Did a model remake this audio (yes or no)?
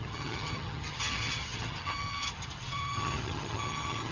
yes